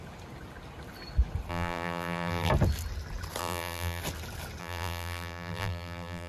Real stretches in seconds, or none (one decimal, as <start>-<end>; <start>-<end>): 0.0-1.5; 2.5-3.4; 4.0-4.6